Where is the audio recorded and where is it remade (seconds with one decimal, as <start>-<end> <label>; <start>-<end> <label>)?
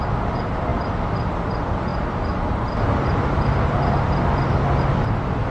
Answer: 0.0-5.5 recorded